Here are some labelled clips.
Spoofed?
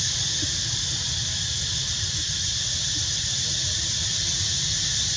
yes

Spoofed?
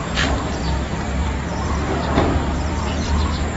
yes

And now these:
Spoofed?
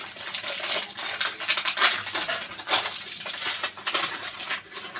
no